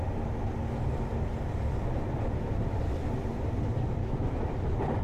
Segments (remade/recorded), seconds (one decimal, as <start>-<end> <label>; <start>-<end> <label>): 0.0-4.0 recorded; 4.0-4.5 remade; 4.5-5.0 recorded